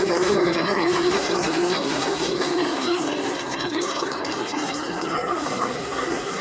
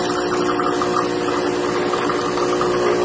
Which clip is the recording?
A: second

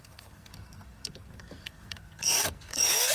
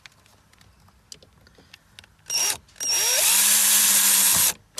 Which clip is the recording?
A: second